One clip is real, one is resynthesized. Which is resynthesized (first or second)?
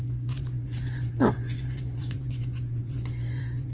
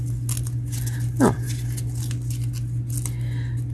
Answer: first